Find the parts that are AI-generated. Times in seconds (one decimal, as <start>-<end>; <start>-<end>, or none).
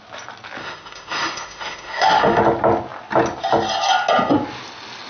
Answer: 0.6-2.4